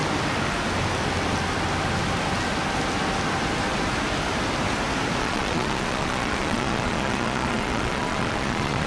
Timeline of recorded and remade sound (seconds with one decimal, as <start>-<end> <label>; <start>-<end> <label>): 0.0-5.2 recorded; 5.2-8.9 remade